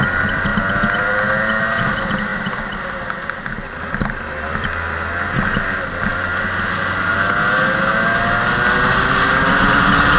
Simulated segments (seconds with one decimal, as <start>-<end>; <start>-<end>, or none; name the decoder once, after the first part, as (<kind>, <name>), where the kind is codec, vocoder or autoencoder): none